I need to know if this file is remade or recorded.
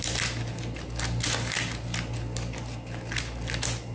recorded